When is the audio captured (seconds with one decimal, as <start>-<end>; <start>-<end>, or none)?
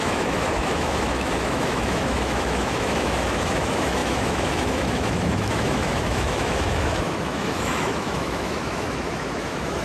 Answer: none